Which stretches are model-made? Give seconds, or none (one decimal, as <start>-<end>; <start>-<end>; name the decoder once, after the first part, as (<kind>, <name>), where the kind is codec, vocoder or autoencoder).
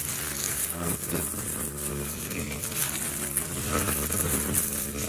0.4-1.2 (codec, SNAC); 1.9-2.4